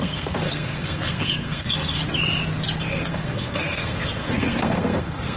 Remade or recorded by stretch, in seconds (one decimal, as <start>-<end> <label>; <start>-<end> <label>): 0.0-2.0 remade; 2.0-2.8 recorded; 2.8-5.4 remade